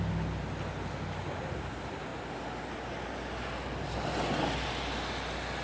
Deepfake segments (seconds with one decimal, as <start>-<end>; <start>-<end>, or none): none